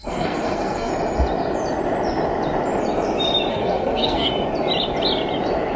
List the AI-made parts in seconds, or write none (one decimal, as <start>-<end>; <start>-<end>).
0.0-0.9; 3.5-4.3